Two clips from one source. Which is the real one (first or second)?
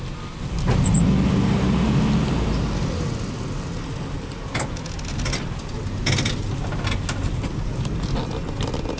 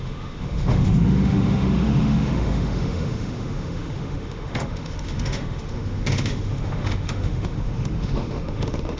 first